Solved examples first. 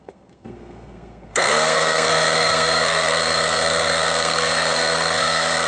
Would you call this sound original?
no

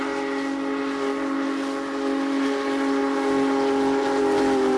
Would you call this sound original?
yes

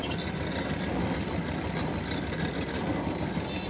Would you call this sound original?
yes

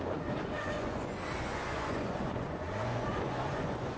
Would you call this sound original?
no